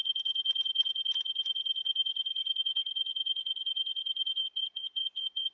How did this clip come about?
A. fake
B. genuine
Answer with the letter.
A